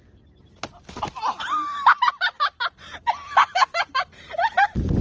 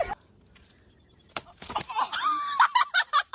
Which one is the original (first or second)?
first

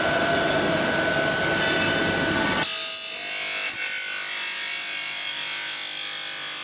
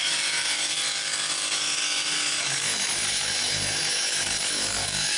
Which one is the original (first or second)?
first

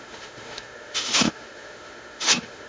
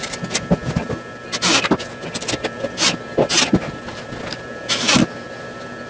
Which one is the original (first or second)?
second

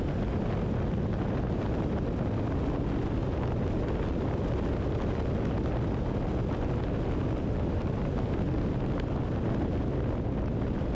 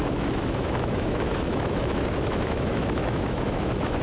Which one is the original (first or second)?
first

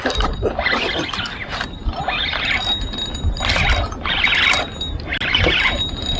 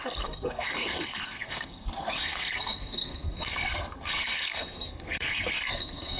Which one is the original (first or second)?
first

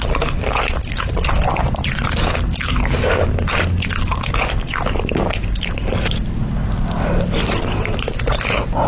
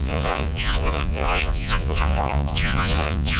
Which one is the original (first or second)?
first